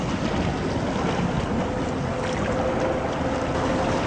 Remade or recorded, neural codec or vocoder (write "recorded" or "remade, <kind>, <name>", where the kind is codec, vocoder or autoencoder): recorded